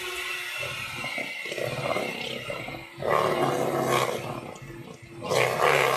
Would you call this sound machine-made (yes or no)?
no